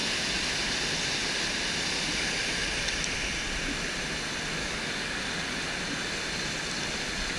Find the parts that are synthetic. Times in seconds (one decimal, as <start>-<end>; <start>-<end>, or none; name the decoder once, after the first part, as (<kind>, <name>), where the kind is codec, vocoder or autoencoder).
4.6-5.2 (codec, DAC)